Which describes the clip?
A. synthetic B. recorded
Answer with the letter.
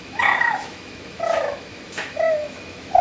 A